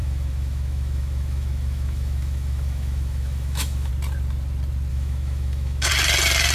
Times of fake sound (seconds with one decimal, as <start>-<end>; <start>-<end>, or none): 0.0-3.9; 4.9-5.9